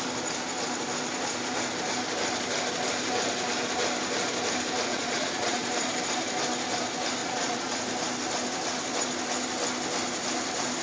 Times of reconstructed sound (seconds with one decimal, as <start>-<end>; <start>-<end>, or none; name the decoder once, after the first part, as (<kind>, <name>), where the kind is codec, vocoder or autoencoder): 4.9-5.7 (vocoder, Vocos); 7.2-7.8